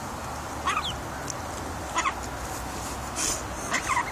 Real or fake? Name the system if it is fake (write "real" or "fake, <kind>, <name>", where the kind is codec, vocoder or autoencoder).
real